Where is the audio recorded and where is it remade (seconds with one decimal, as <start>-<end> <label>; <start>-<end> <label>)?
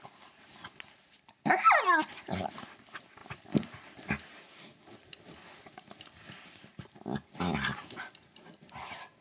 0.0-9.2 recorded